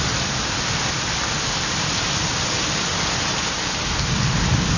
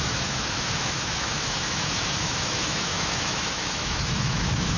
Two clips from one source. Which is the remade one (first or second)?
second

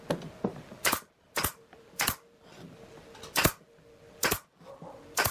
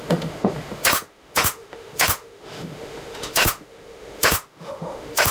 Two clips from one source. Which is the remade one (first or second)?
second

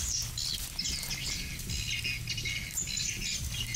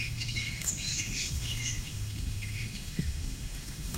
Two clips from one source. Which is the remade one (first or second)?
second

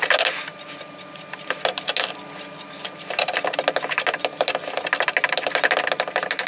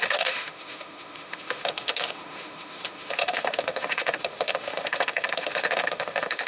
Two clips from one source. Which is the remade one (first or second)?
second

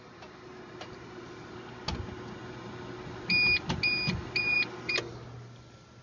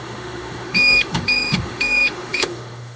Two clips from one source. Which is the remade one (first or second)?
second